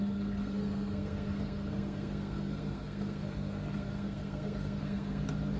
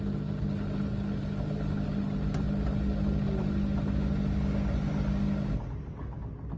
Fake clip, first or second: first